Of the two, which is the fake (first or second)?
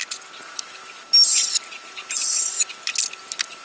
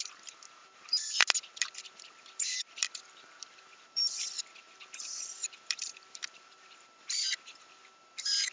second